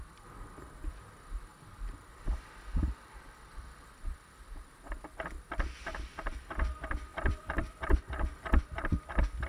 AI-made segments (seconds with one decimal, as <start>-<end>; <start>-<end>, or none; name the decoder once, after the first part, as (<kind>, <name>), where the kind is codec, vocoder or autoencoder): 1.5-3.8 (vocoder, BigVGAN v2); 7.1-8.0